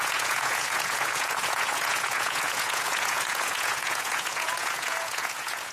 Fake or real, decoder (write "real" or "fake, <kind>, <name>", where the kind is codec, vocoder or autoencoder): fake, vocoder, Vocos